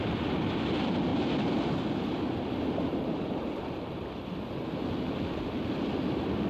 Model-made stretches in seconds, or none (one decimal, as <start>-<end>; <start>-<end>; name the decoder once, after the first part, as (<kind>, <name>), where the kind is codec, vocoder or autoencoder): 1.1-4.4 (vocoder, BigVGAN v2)